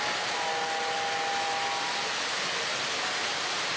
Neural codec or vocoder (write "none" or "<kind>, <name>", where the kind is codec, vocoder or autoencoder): none